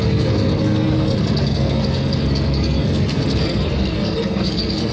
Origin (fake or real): fake